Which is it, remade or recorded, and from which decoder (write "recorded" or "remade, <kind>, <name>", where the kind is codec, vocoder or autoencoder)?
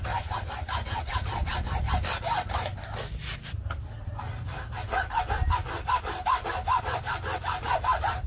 recorded